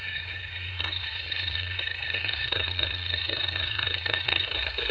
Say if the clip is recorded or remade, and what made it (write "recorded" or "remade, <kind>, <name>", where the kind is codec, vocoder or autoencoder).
remade, codec, SNAC